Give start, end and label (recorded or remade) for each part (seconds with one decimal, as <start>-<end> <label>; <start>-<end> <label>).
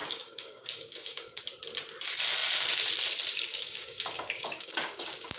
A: 0.0-1.4 remade; 1.4-3.5 recorded; 3.5-5.4 remade